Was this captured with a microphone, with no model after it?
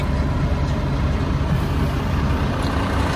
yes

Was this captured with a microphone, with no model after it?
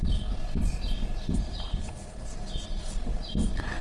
yes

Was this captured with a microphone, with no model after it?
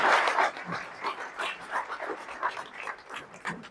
no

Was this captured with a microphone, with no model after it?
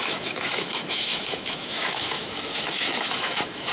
no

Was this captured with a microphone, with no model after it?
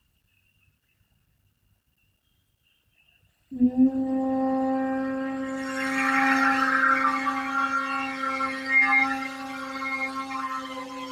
yes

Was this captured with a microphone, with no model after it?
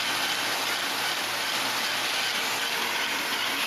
yes